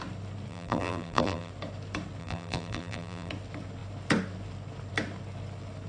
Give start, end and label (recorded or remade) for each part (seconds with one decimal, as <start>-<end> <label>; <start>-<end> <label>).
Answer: 0.0-0.5 recorded; 0.5-1.5 remade; 1.5-2.2 recorded; 2.2-3.3 remade; 3.3-5.9 recorded